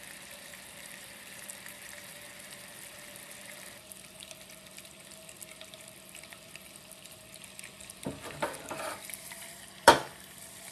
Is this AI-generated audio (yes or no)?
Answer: yes